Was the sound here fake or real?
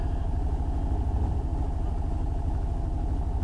real